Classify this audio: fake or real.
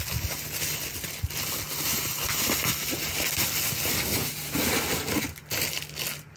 real